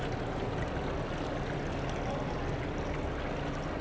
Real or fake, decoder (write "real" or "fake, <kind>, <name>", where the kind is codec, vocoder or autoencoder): real